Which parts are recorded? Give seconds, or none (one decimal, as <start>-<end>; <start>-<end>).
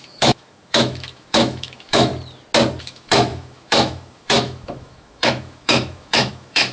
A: 2.1-2.8